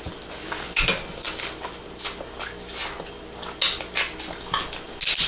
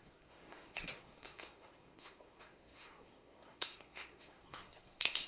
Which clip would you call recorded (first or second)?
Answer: first